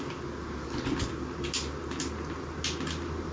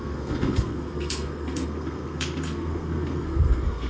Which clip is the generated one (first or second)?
second